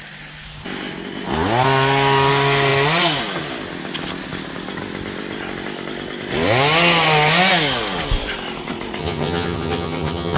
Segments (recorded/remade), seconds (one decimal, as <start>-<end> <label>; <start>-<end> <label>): 0.0-9.0 recorded; 9.0-10.4 remade

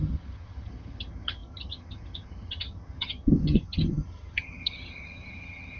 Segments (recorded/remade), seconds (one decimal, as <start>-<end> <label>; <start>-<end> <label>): 0.0-5.8 remade

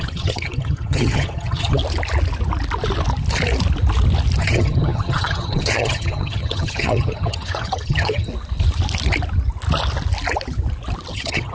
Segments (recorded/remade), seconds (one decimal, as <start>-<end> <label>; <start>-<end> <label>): 0.0-1.8 remade; 1.8-4.4 recorded; 4.4-8.3 remade; 8.3-11.1 recorded; 11.1-11.5 remade

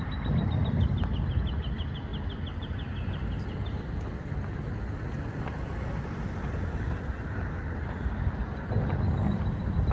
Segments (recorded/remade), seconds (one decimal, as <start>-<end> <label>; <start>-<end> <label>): 0.0-9.9 recorded

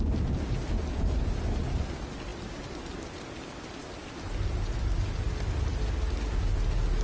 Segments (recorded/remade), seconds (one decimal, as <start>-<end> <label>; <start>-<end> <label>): 0.0-7.0 recorded

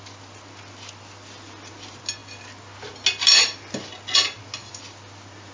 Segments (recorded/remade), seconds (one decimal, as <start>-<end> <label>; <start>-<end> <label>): 0.0-5.5 recorded

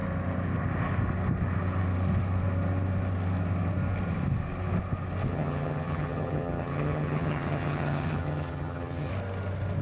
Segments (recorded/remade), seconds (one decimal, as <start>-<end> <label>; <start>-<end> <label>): 0.0-5.3 recorded; 5.3-9.1 remade; 9.1-9.8 recorded